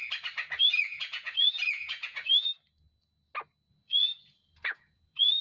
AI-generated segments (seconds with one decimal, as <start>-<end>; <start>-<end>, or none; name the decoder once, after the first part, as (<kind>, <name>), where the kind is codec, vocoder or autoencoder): 0.6-2.5 (vocoder, Vocos); 3.7-5.4